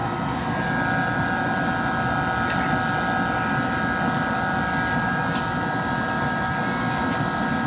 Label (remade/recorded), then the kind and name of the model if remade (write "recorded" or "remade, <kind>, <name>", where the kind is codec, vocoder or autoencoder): recorded